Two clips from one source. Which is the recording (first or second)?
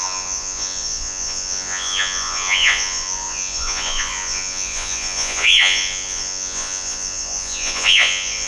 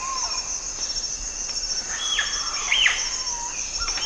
second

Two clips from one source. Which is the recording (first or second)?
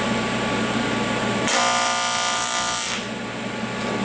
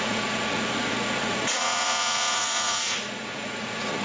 first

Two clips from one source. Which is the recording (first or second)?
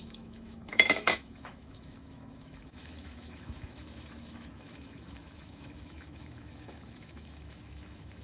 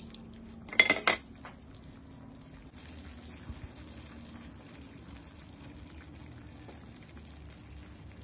second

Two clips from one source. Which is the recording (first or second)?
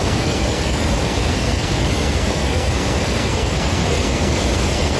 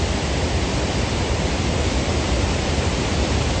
second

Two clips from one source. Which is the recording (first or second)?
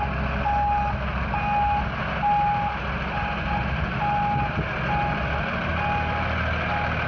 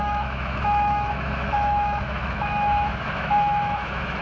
first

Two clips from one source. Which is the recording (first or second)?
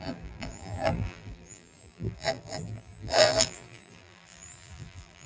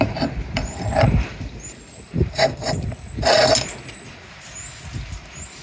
second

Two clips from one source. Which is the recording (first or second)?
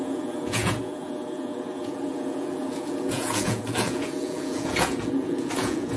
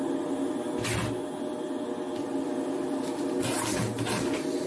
second